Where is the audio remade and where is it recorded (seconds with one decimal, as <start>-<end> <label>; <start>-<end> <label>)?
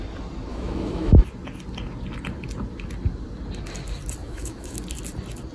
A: 0.0-0.5 recorded; 0.5-1.1 remade; 1.1-4.2 recorded; 4.2-4.8 remade; 4.8-5.5 recorded